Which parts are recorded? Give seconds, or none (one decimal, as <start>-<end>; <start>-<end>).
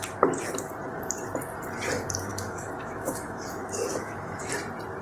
0.0-2.3; 4.5-5.0